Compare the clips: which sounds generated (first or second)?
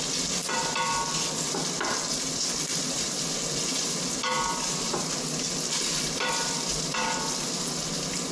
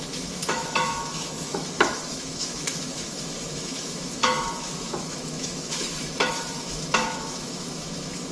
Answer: second